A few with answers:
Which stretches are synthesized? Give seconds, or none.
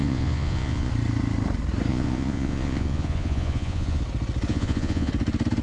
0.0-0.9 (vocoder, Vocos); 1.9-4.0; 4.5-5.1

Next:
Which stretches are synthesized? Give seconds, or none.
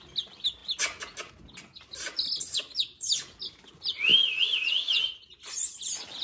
none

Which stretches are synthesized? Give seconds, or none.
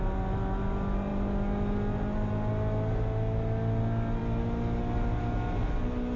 none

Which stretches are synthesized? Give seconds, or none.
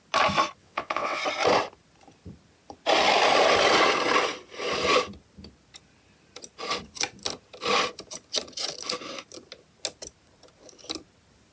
0.6-1.2 (vocoder, WaveNeXt)